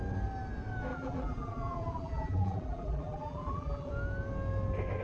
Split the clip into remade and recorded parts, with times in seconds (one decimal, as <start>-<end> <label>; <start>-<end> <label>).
0.0-0.9 recorded; 0.9-3.9 remade; 3.9-5.0 recorded